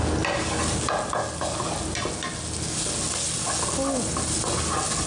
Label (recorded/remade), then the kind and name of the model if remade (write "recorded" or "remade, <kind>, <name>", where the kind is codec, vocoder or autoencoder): recorded